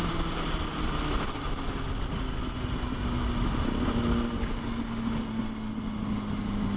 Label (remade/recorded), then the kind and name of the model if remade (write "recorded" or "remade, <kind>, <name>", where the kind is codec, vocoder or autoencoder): recorded